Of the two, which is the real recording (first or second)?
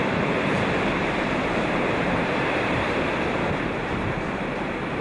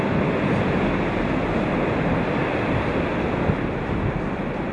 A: second